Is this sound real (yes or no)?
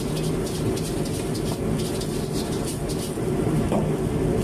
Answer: yes